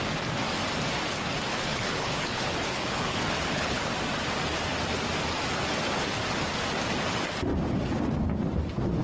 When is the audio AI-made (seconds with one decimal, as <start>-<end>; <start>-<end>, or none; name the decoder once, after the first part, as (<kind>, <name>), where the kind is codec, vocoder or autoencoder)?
1.5-3.9 (codec, HILCodec)